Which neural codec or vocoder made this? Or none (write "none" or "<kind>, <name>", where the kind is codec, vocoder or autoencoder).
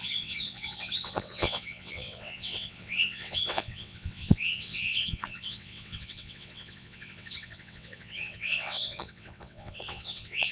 vocoder, WaveNeXt